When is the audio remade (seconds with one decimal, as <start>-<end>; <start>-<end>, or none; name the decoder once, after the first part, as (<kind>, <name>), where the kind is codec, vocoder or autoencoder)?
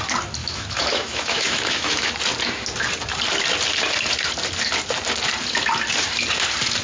0.4-2.1 (autoencoder, DAC-VAE)